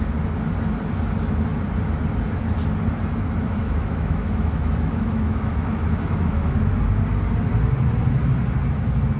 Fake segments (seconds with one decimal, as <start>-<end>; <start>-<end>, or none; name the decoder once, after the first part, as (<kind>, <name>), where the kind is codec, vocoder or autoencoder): 3.6-6.8 (autoencoder, DAC-VAE)